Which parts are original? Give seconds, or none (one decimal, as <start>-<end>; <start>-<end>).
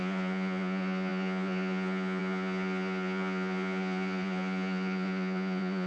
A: none